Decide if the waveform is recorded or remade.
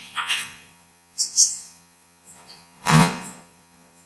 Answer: remade